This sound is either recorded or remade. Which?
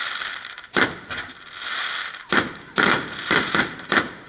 recorded